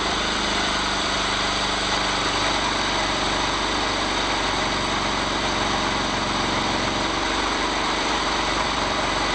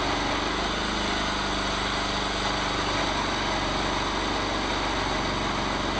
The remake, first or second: first